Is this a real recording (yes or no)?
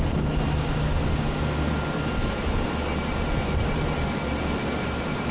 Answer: yes